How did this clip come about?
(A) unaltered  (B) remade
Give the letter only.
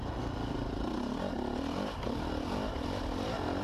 A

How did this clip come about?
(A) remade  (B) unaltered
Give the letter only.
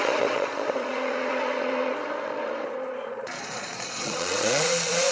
A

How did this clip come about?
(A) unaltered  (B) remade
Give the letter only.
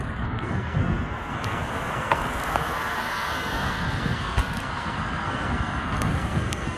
B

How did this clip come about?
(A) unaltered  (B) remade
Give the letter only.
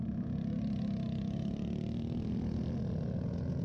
A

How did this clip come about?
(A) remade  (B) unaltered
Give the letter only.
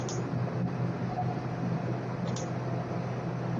B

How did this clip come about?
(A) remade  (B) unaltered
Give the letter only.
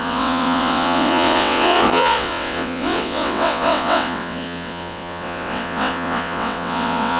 A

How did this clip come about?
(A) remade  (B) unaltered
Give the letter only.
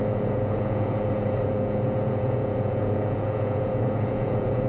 A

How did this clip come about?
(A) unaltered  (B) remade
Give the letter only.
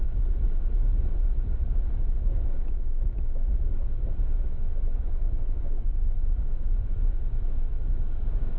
A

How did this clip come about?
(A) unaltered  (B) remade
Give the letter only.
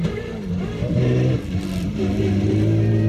A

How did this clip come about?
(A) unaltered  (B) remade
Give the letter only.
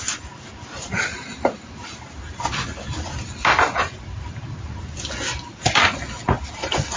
A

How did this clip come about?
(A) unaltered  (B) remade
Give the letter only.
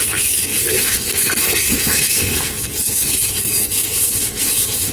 B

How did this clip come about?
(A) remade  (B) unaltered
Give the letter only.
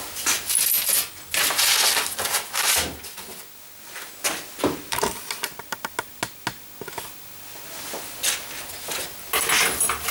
B